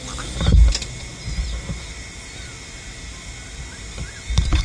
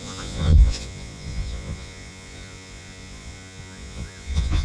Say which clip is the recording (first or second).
first